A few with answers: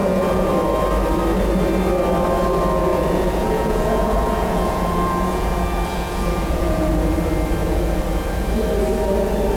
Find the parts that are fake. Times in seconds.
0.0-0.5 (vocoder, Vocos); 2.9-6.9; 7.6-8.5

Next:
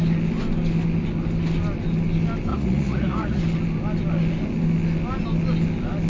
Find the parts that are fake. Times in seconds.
2.5-3.4 (vocoder, Vocos)

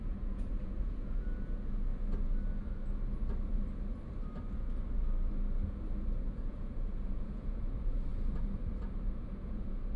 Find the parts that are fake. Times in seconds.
0.0-1.9 (vocoder, Vocos); 6.2-8.1; 9.1-10.0

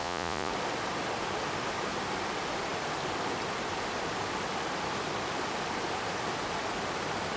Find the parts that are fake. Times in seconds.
0.0-0.5 (vocoder, Vocos)

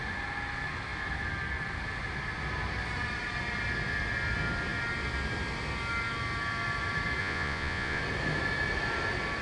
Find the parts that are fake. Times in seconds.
7.2-8.0 (vocoder, Vocos)

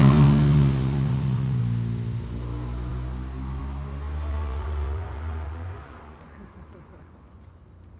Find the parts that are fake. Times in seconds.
0.0-1.6 (vocoder, Vocos); 4.3-7.6

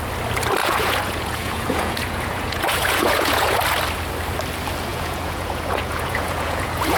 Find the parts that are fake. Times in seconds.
0.6-3.6 (vocoder, Vocos); 4.9-7.0

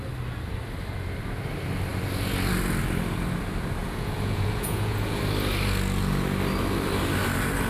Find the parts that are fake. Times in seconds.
3.8-5.2 (vocoder, Vocos)